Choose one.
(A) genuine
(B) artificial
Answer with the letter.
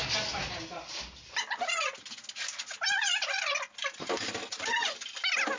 A